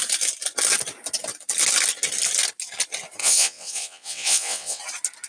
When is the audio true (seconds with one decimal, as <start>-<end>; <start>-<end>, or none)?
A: 0.0-3.2; 4.8-5.3